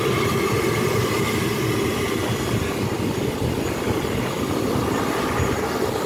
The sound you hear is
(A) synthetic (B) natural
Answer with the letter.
B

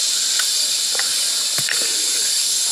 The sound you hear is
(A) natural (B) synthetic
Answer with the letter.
A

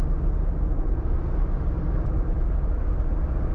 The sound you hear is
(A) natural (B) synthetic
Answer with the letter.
A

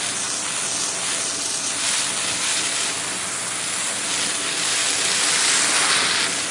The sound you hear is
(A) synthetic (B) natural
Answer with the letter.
B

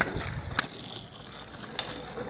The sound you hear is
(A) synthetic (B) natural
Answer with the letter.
B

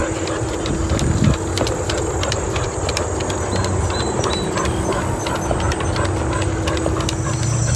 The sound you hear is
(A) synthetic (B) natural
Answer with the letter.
B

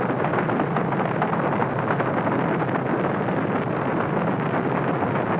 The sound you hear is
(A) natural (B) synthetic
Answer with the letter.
A